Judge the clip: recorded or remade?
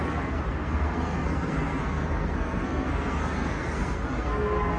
remade